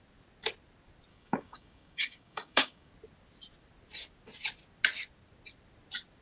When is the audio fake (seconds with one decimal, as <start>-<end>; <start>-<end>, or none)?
1.1-2.9